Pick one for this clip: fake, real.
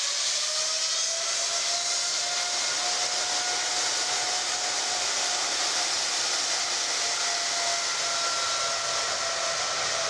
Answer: real